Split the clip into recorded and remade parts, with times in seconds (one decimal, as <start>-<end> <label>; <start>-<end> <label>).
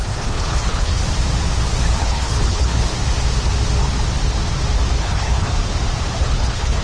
0.0-1.0 remade; 1.0-2.0 recorded; 2.0-2.9 remade; 2.9-5.0 recorded; 5.0-5.5 remade; 5.5-6.2 recorded; 6.2-6.8 remade